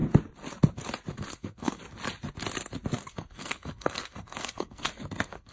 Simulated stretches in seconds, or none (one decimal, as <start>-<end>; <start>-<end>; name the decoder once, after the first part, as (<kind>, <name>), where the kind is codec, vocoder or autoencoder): 1.3-1.8 (codec, SNAC); 3.1-5.5